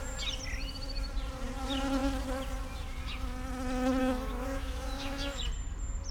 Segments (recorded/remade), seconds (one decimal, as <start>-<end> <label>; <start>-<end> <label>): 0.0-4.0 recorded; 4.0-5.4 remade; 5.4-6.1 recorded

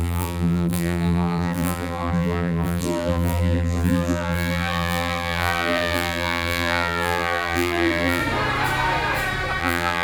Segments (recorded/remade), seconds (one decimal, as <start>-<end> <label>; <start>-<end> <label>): 0.0-8.2 remade; 8.2-9.6 recorded; 9.6-10.0 remade

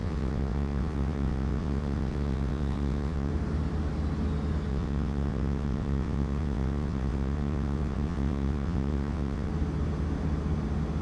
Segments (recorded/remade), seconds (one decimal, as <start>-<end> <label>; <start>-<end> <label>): 0.0-3.3 remade; 3.3-4.7 recorded; 4.7-9.5 remade; 9.5-11.0 recorded